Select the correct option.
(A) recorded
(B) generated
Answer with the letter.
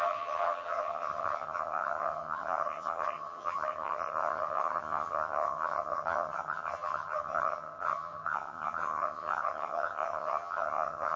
B